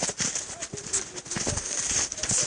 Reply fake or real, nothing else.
real